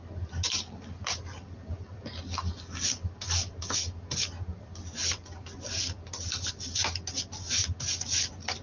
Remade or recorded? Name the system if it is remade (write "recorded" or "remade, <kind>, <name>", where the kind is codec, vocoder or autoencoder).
recorded